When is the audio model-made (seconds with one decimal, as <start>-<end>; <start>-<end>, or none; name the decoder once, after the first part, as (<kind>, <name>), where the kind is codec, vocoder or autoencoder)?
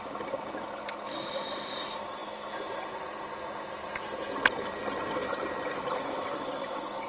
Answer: none